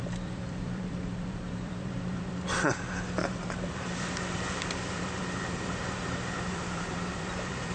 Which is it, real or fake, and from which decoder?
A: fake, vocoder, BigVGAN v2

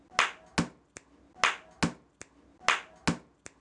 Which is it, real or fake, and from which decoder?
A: real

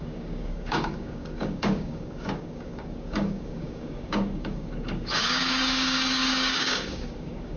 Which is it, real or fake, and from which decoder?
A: fake, codec, DAC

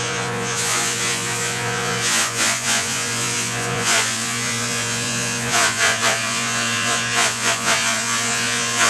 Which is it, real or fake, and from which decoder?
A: fake, vocoder, Vocos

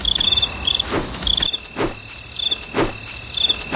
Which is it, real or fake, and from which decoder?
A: real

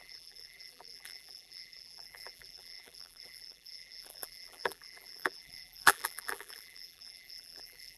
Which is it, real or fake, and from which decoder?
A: fake, vocoder, BigVGAN v2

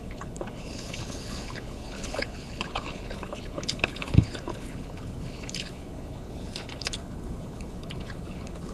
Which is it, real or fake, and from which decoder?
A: fake, codec, HILCodec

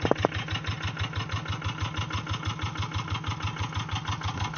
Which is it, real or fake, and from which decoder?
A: real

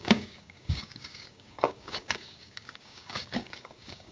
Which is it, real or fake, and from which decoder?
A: fake, codec, DAC